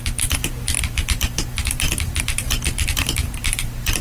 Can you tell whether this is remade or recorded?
remade